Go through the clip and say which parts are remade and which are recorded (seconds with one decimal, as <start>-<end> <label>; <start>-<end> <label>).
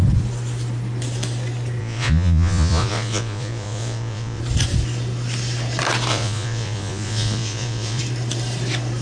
0.0-1.8 recorded; 1.8-4.4 remade; 4.4-6.1 recorded; 6.1-8.0 remade; 8.0-9.0 recorded